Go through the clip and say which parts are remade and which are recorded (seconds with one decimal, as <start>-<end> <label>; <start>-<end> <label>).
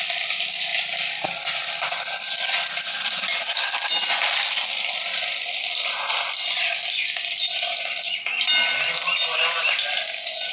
0.0-10.5 recorded